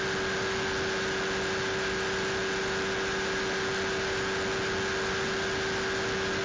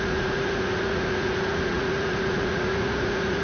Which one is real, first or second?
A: first